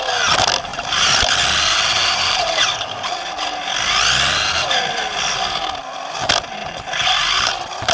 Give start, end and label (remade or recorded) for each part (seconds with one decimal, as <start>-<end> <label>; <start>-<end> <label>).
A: 0.0-0.7 recorded; 0.7-1.3 remade; 1.3-2.0 recorded; 2.0-3.1 remade; 3.1-7.9 recorded